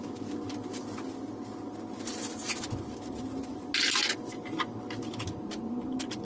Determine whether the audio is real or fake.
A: real